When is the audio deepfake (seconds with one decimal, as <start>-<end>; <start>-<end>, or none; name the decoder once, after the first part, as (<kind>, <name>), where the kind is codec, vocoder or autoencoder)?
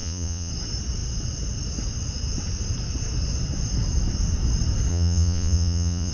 0.0-0.5 (vocoder, Vocos); 4.9-6.1